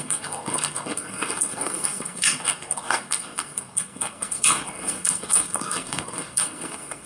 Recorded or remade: remade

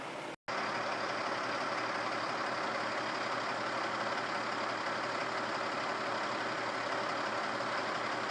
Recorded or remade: recorded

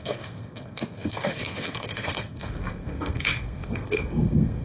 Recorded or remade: remade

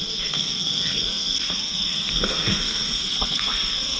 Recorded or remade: remade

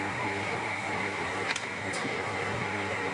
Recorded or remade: remade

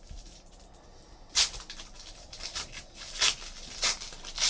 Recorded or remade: recorded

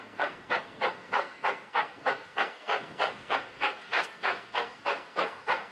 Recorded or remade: remade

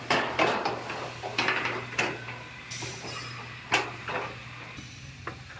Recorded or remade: recorded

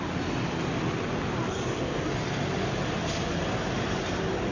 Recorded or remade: recorded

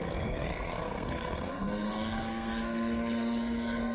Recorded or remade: remade